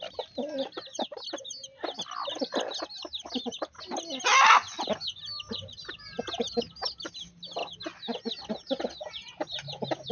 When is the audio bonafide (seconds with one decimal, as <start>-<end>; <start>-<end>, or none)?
0.0-10.1